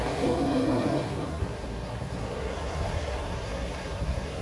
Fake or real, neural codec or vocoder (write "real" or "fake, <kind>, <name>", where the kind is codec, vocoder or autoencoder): fake, codec, SNAC